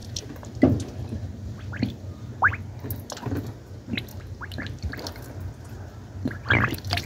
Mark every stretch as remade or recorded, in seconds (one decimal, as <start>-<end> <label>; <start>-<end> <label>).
0.0-7.1 recorded